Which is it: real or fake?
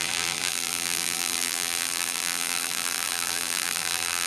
fake